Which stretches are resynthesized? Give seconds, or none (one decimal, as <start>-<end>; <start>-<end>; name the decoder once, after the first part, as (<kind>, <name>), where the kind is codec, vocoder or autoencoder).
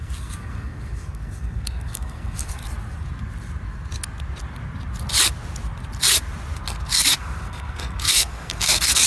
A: 0.0-2.6 (codec, SNAC); 7.2-9.1